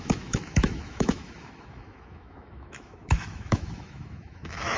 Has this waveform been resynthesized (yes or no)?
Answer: yes